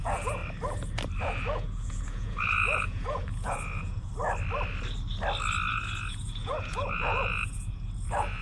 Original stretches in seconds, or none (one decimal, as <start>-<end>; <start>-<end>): 0.4-1.2; 4.1-5.7